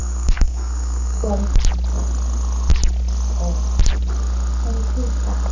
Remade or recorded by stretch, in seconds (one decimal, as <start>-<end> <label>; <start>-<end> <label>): 0.0-1.3 remade; 1.3-5.5 recorded